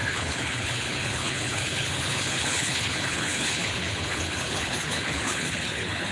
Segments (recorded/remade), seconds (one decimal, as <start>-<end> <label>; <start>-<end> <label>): 0.0-6.1 remade